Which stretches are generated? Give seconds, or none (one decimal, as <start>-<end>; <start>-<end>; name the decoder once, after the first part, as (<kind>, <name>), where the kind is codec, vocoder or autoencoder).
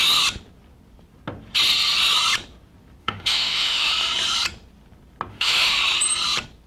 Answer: 3.0-3.9 (autoencoder, DAC-VAE); 5.3-5.8